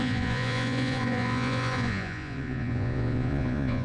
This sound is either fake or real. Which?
fake